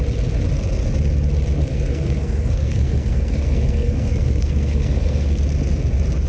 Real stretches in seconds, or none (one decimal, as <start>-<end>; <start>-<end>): 0.0-1.6; 5.4-6.3